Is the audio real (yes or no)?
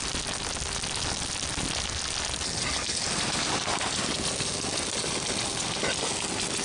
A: yes